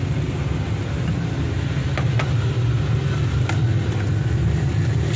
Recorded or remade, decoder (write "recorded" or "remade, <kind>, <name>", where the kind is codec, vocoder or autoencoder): recorded